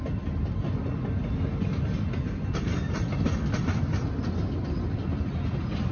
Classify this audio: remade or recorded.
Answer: recorded